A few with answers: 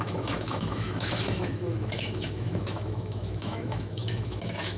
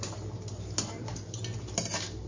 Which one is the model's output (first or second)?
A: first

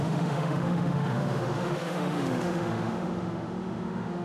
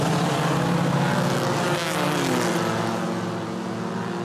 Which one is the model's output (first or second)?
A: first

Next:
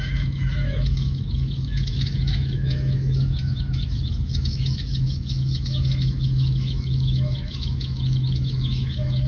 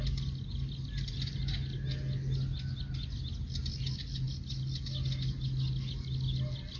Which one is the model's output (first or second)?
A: first